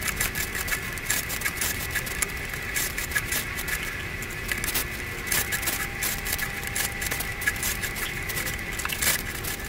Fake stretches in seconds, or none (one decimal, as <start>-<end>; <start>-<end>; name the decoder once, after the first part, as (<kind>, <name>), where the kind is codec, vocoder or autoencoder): 0.5-3.4 (vocoder, BigVGAN v2); 7.3-8.3